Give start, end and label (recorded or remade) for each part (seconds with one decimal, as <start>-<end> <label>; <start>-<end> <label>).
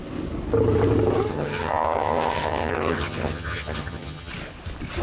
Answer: 0.0-1.3 recorded; 1.3-4.3 remade; 4.3-5.0 recorded